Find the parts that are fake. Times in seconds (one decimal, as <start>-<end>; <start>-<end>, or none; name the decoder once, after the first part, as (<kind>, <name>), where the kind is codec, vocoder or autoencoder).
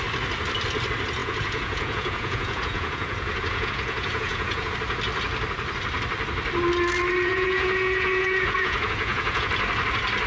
1.2-4.7 (vocoder, Vocos); 7.3-9.5